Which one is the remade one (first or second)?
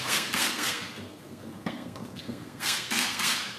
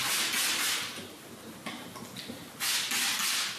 first